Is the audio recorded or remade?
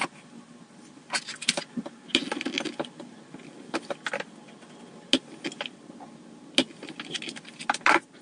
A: recorded